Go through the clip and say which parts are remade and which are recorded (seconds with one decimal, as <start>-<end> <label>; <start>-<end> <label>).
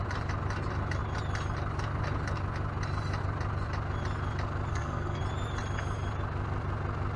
0.0-4.7 recorded; 4.7-5.2 remade; 5.2-7.2 recorded